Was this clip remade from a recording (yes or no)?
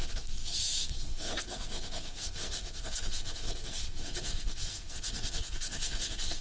yes